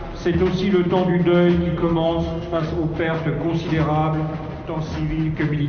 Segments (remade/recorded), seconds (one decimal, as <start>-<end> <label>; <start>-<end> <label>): 0.0-1.8 recorded; 1.8-2.7 remade; 2.7-5.7 recorded